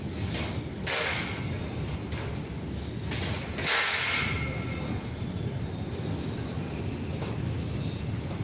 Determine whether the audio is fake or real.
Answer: real